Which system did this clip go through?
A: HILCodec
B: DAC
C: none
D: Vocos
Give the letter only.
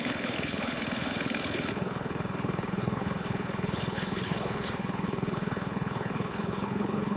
A